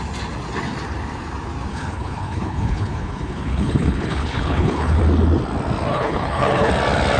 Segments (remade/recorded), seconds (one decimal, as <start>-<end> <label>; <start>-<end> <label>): 0.0-1.7 recorded; 1.7-5.0 remade; 5.0-5.9 recorded; 5.9-6.7 remade; 6.7-7.2 recorded